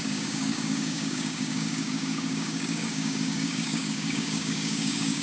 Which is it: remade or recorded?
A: remade